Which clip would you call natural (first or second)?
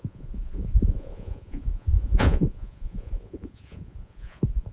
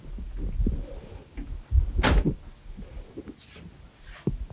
second